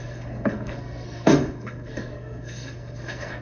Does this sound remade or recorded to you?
remade